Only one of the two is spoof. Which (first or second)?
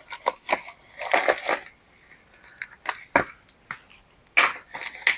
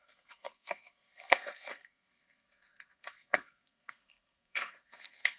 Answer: second